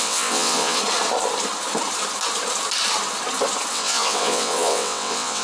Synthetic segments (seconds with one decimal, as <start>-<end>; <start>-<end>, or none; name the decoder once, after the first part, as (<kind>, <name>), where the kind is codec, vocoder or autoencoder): 0.0-0.8 (vocoder, WaveNeXt); 3.7-5.4